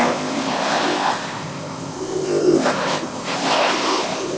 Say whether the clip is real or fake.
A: fake